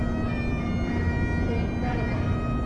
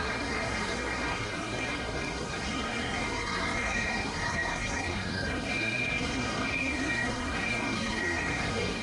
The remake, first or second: second